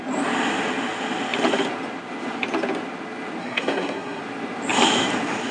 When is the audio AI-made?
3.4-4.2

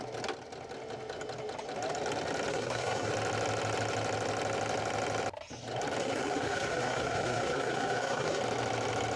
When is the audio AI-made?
2.5-3.1; 6.0-8.4